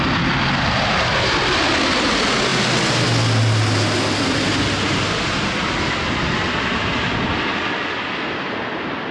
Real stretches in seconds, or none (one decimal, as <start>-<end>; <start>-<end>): 0.0-9.1